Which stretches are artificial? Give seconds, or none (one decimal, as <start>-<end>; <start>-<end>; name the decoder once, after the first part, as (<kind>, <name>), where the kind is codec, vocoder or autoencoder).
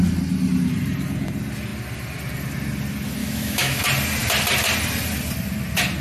3.2-3.8 (autoencoder, DAC-VAE)